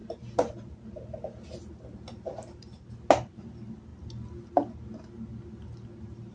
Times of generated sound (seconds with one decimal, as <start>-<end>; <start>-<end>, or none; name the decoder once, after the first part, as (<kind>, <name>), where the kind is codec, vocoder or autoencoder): none